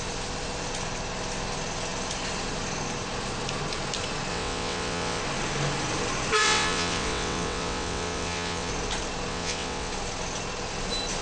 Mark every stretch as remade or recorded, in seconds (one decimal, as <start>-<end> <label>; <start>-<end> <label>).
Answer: 0.0-4.3 recorded; 4.3-5.2 remade; 5.2-6.4 recorded; 6.4-8.7 remade; 8.7-9.3 recorded; 9.3-9.9 remade; 9.9-11.2 recorded